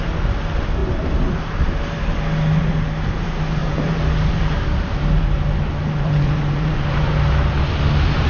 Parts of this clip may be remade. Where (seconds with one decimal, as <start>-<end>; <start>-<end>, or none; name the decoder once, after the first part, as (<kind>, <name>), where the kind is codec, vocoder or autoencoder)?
3.6-7.1 (vocoder, BigVGAN v2)